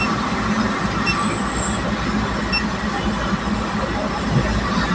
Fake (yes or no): no